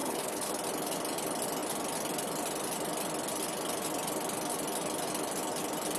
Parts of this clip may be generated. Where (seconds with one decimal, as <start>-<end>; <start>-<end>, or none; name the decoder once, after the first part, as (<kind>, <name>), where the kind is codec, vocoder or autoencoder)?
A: 0.0-0.5 (codec, HILCodec)

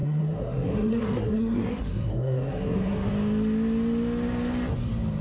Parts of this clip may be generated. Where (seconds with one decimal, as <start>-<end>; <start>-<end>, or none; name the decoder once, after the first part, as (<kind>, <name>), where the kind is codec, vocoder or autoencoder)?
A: 0.0-3.1 (codec, SNAC)

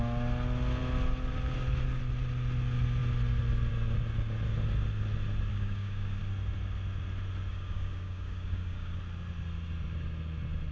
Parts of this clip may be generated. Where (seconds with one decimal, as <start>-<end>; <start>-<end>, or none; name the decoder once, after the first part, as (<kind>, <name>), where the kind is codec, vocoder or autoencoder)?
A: 5.5-6.2 (codec, DAC); 7.5-9.0

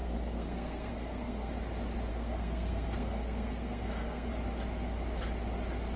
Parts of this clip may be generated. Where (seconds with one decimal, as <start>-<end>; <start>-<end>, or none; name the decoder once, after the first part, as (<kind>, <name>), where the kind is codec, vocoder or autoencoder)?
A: 0.0-1.5 (codec, SNAC); 2.1-4.3

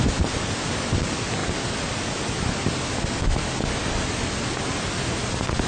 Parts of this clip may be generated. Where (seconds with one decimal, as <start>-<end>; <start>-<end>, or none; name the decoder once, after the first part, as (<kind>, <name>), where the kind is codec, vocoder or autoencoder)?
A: none

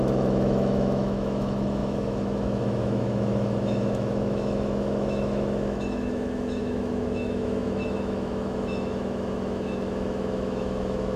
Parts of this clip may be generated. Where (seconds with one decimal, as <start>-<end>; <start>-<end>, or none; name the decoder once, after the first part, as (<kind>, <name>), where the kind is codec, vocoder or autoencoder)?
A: 0.0-11.2 (autoencoder, DAC-VAE)